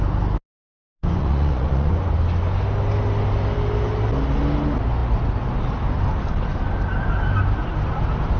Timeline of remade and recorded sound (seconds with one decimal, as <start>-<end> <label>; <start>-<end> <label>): 0.0-1.0 recorded; 1.0-2.1 remade; 2.1-8.4 recorded